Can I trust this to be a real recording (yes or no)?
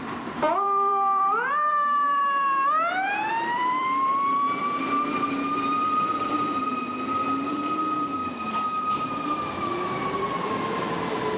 no